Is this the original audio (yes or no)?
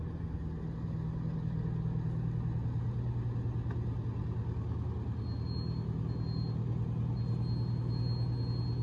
yes